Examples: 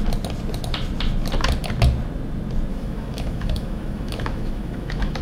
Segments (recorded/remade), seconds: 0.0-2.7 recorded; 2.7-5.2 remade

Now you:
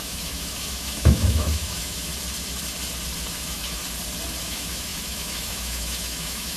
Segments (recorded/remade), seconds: 0.0-2.1 remade; 2.1-3.3 recorded; 3.3-3.8 remade; 3.8-4.4 recorded; 4.4-6.6 remade

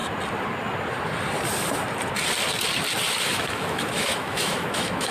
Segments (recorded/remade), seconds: 0.0-3.1 recorded; 3.1-5.1 remade

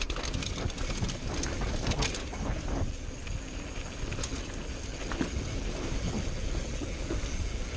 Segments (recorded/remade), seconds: 0.0-7.8 recorded

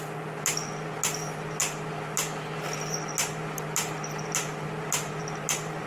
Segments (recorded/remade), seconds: 0.0-5.9 recorded

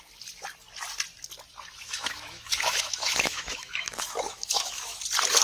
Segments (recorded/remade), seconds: 0.0-1.8 recorded; 1.8-5.0 remade; 5.0-5.4 recorded

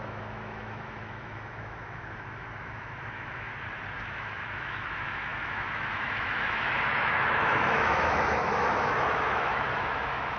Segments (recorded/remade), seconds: 0.0-3.5 remade; 3.5-4.0 recorded; 4.0-10.4 remade

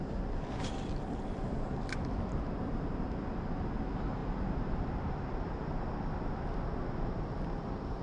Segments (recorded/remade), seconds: 0.0-8.0 recorded